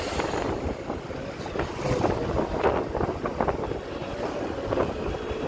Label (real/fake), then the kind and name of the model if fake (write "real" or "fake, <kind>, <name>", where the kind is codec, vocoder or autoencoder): real